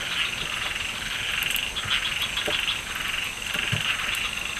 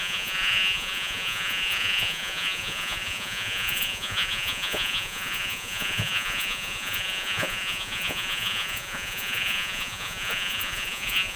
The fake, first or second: second